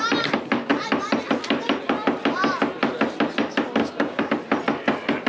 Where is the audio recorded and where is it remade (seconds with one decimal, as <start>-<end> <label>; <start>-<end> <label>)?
0.0-3.8 recorded; 3.8-4.3 remade; 4.3-5.3 recorded